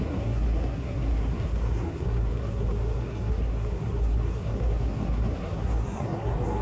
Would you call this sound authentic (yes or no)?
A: no